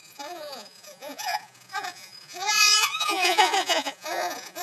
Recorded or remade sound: remade